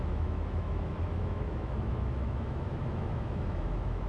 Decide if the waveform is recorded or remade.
remade